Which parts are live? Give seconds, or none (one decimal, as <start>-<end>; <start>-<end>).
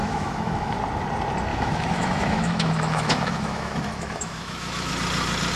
0.8-1.5; 4.9-5.6